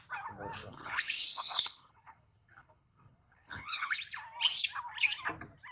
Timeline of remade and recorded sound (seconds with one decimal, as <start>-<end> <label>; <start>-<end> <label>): 0.0-0.6 recorded; 0.6-4.0 remade; 4.0-5.7 recorded